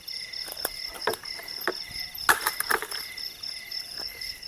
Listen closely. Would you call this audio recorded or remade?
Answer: recorded